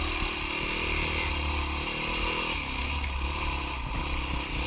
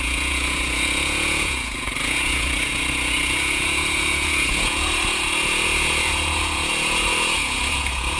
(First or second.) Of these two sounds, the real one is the first